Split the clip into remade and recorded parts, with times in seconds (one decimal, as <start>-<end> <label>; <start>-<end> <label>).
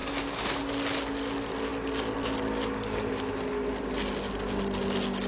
0.0-0.6 remade; 0.6-5.3 recorded